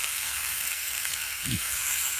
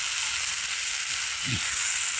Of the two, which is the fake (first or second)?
first